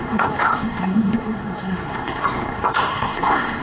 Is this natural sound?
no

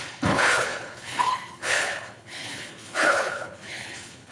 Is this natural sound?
no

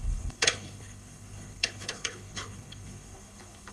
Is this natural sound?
no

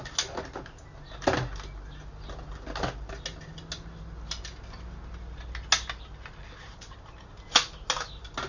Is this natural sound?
yes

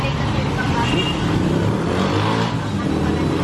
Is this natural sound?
yes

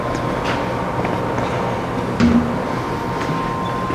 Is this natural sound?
yes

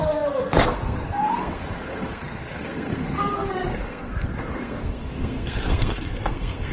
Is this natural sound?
no